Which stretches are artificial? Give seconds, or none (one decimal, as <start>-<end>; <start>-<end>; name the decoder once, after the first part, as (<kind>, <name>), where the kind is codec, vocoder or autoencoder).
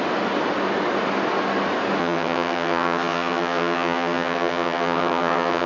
2.0-5.7 (vocoder, HiFi-GAN)